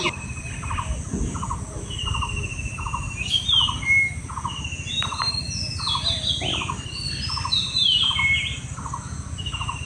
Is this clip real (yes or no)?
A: yes